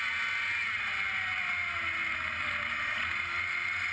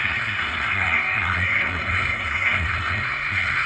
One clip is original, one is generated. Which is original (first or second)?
first